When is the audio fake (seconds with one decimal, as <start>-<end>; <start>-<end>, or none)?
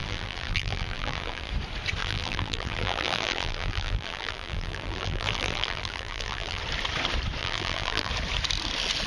0.0-1.5; 2.0-6.6; 7.4-8.1